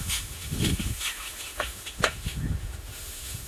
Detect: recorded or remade remade